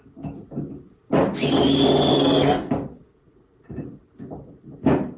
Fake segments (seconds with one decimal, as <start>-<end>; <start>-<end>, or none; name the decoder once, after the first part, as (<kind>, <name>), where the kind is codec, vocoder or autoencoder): 2.1-2.7 (codec, SNAC)

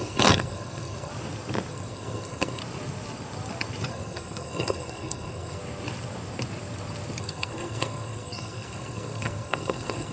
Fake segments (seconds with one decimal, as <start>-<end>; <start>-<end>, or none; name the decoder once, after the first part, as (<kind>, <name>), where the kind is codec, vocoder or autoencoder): 0.0-1.1 (codec, SNAC); 1.7-2.6; 3.9-5.6; 7.2-10.1

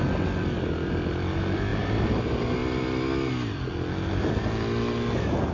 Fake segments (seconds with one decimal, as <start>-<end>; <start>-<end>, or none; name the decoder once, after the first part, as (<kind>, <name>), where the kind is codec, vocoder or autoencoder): none

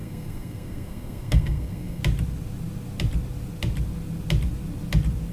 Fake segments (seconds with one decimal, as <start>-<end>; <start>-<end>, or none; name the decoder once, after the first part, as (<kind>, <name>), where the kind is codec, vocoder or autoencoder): 0.0-2.0 (codec, SNAC)

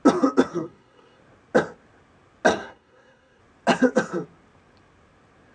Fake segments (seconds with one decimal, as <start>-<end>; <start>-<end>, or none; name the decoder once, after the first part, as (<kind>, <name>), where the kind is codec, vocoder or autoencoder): 0.5-1.2 (codec, SNAC); 2.5-3.4

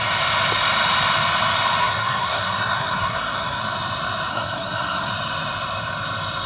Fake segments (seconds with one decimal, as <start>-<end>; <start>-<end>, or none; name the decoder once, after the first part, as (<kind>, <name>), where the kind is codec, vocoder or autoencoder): 1.8-3.6 (codec, SNAC); 4.3-5.1

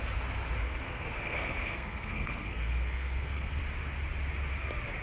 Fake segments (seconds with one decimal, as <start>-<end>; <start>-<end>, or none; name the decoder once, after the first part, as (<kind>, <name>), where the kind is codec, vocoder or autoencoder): 0.6-3.6 (codec, SNAC)

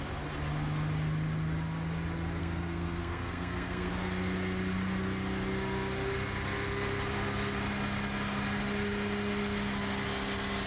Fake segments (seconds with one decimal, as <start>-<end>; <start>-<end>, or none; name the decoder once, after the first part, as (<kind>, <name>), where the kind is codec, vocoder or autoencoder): 2.4-3.9 (codec, SNAC)